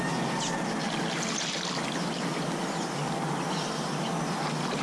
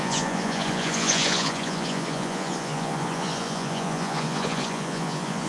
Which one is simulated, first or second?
second